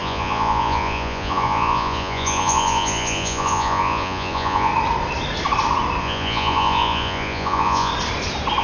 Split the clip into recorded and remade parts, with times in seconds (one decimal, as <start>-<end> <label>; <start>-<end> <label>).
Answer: 0.0-4.7 remade; 4.7-6.0 recorded; 6.0-7.9 remade; 7.9-8.6 recorded